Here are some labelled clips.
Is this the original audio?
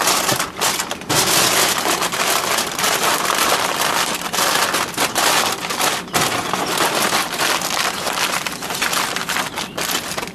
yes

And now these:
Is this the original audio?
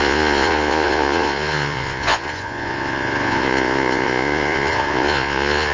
no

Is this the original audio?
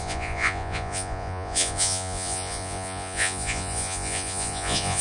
no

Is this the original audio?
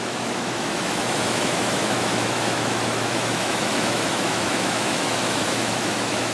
no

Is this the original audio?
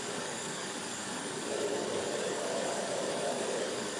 no